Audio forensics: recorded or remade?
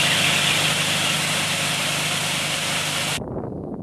remade